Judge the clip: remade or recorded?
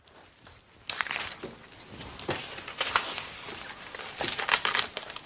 recorded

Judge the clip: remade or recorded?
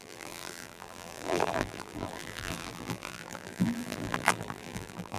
remade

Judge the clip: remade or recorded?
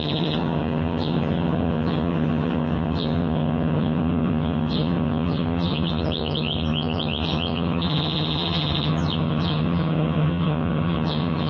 remade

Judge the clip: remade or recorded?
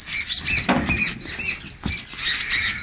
recorded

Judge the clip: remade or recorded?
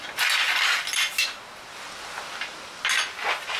recorded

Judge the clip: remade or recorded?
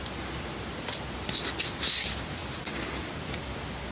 recorded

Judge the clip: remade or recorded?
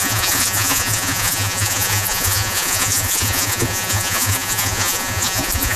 remade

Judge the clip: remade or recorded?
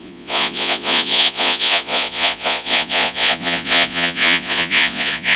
remade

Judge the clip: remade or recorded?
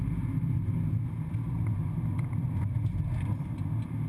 recorded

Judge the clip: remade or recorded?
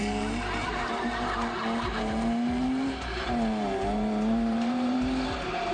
remade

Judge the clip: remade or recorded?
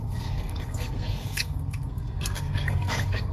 remade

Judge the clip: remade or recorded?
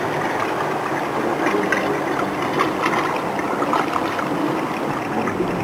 recorded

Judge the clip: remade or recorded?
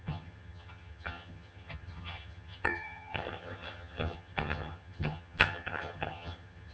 remade